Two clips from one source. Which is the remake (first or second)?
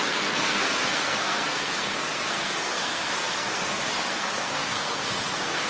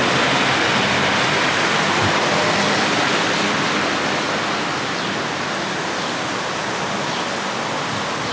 first